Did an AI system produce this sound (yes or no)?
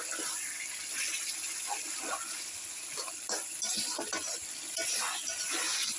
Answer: no